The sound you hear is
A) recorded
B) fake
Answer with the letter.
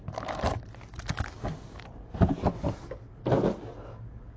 A